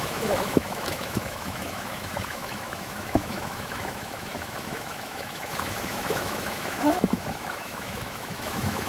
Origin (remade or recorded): remade